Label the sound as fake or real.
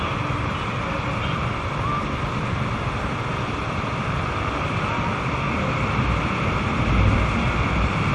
real